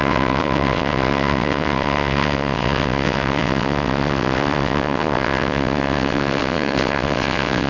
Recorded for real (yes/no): no